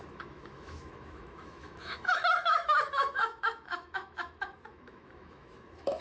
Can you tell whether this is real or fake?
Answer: fake